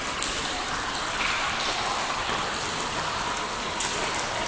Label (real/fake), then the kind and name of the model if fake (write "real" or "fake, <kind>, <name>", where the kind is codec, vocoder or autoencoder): real